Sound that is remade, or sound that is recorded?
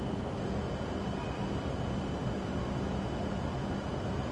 recorded